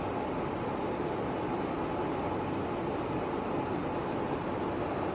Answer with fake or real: real